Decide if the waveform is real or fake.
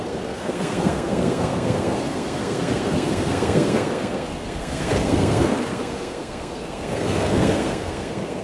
fake